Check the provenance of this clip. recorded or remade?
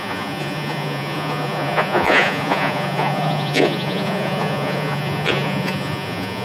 remade